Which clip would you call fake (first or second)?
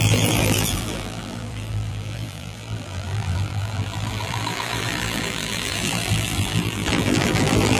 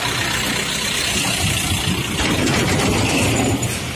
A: first